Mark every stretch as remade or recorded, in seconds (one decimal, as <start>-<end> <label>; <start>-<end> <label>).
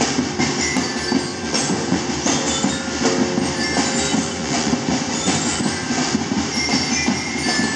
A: 0.0-1.3 recorded; 1.3-2.0 remade; 2.0-4.1 recorded; 4.1-6.3 remade; 6.3-7.8 recorded